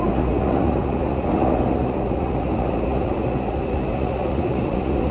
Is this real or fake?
fake